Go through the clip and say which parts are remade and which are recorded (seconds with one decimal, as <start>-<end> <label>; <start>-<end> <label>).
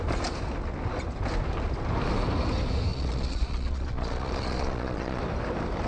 0.0-2.9 recorded; 2.9-5.2 remade; 5.2-5.9 recorded